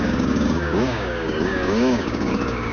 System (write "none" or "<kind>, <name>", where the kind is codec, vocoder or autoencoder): codec, DAC